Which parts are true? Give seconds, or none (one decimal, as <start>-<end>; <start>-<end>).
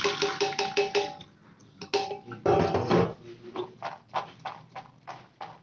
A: 0.0-5.6